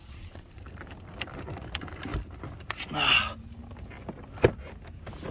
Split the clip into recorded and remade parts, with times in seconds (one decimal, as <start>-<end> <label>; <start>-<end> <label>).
0.0-0.6 remade; 0.6-5.3 recorded